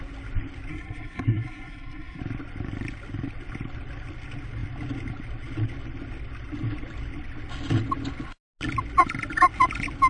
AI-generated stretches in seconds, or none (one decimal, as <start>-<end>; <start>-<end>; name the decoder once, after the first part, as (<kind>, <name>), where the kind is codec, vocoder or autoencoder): 0.7-2.2 (codec, SNAC)